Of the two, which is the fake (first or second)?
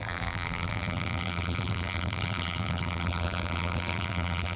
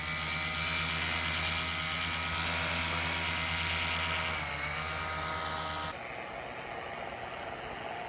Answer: first